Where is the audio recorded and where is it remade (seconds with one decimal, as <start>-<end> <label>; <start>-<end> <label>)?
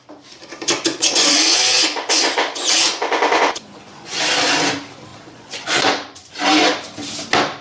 0.0-0.9 recorded; 0.9-4.2 remade; 4.2-5.1 recorded; 5.1-6.3 remade; 6.3-7.6 recorded